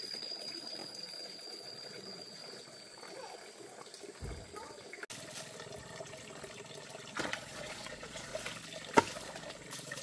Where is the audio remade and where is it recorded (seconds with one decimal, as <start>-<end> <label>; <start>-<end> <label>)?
0.0-2.4 remade; 2.4-7.2 recorded; 7.2-8.3 remade; 8.3-10.0 recorded